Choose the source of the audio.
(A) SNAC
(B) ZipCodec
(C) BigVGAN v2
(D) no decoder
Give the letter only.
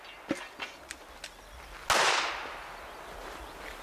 D